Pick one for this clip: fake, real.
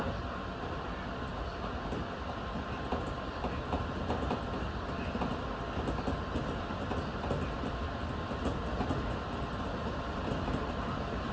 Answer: real